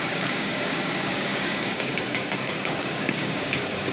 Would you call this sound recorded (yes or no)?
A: no